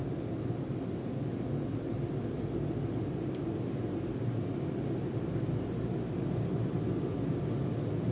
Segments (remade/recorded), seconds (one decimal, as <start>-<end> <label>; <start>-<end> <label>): 0.0-8.1 recorded